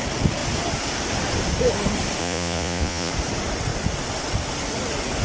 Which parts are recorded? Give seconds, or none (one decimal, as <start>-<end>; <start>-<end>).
0.0-2.2; 3.1-5.2